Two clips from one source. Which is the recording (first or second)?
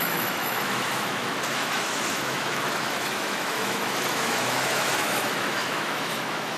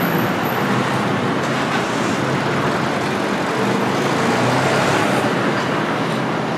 second